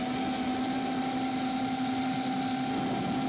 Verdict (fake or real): real